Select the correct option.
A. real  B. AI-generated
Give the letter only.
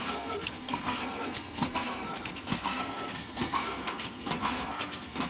B